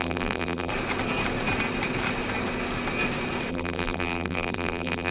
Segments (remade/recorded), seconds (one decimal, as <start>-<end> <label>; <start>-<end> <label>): 0.0-0.7 remade; 0.7-3.5 recorded; 3.5-5.1 remade